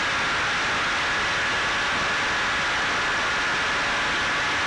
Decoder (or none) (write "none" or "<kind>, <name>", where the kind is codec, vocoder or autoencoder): none